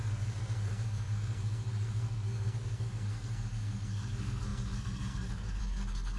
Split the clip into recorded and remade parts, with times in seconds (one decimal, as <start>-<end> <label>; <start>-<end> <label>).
0.0-6.2 remade